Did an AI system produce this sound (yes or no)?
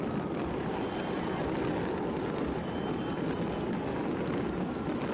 no